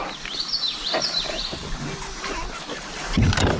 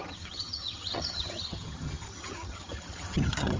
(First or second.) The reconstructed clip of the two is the second